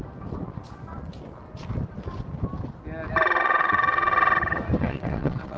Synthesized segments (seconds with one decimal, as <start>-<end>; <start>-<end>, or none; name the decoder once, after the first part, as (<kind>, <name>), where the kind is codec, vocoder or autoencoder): 3.4-4.1 (vocoder, WaveNeXt); 4.8-5.6